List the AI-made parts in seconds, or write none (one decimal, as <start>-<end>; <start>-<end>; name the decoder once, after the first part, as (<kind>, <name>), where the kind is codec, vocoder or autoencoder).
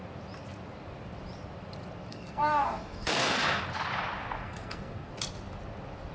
2.1-3.6 (codec, SNAC); 4.4-5.1